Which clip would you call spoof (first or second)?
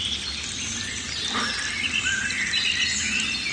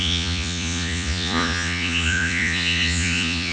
second